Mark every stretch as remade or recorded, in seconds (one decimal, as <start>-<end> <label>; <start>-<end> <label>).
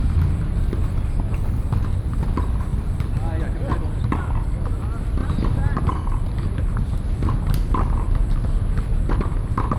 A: 0.0-9.8 recorded